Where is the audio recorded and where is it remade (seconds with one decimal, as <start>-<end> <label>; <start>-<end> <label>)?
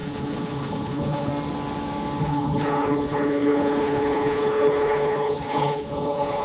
0.0-1.3 remade; 1.3-2.2 recorded; 2.2-6.4 remade